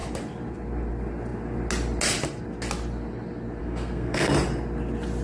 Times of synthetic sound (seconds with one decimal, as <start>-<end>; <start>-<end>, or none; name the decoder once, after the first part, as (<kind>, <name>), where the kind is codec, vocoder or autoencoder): 3.6-4.3 (codec, SNAC)